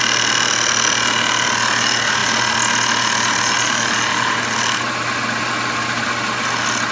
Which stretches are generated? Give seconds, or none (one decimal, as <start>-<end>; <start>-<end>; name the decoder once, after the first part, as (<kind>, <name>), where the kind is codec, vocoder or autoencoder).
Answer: none